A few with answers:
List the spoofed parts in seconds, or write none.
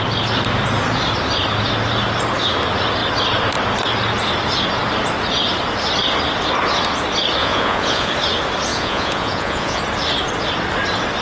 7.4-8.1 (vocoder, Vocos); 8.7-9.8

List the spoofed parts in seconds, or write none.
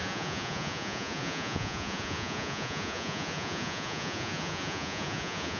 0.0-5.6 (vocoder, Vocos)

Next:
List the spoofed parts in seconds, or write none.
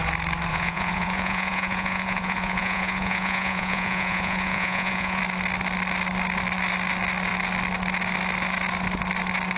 0.5-5.2 (vocoder, Vocos)